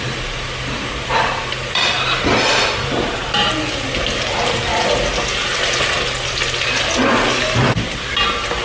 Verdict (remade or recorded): recorded